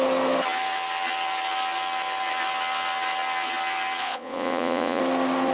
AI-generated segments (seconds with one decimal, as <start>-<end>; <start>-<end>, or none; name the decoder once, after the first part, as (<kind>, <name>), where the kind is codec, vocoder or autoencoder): 4.0-5.0 (vocoder, Vocos)